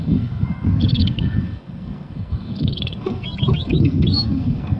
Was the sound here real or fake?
fake